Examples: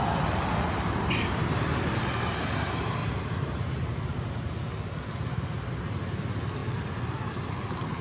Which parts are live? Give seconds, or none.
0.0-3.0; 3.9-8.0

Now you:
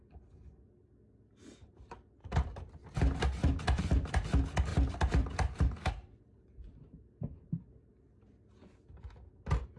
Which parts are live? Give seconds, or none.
0.0-2.2; 4.1-4.7; 8.5-9.8

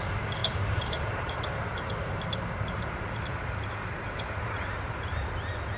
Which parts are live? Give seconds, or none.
0.0-0.4; 2.1-3.3; 5.3-5.8

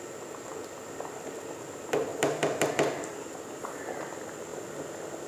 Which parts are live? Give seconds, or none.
0.0-2.1; 2.7-3.1; 3.9-5.3

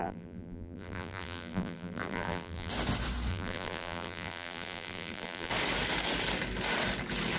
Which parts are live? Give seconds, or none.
2.7-3.3; 5.5-7.4

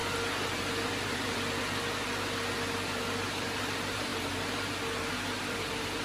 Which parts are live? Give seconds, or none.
0.0-3.6; 4.1-5.4

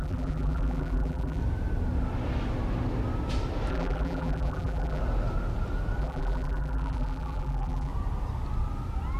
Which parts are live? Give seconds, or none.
1.4-3.7; 5.0-6.0; 7.9-9.2